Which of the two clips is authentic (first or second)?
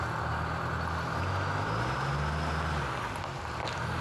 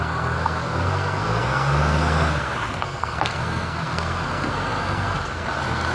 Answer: first